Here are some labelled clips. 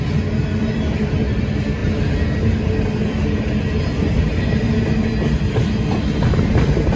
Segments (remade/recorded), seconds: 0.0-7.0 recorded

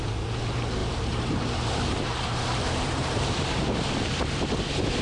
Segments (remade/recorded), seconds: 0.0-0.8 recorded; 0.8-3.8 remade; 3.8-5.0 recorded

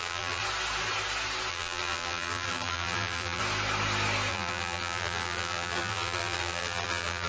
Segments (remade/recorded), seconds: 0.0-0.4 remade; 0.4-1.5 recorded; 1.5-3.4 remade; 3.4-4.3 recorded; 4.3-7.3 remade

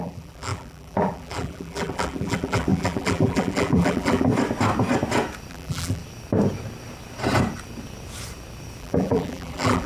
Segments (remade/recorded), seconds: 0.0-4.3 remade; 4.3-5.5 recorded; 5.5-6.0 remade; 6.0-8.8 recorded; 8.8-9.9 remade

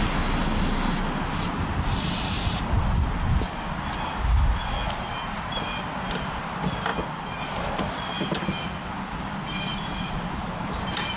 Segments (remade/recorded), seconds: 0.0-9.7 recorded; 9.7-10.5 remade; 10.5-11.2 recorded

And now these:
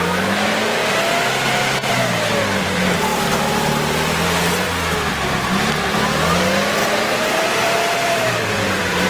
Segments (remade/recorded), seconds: 0.0-6.8 recorded; 6.8-8.4 remade; 8.4-9.1 recorded

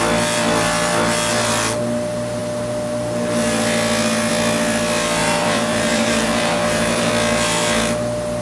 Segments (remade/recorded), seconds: 0.0-5.2 recorded; 5.2-7.1 remade; 7.1-8.4 recorded

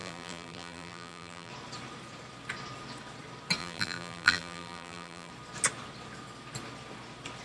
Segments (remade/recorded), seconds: 0.0-1.5 remade; 1.5-3.6 recorded; 3.6-5.3 remade; 5.3-7.4 recorded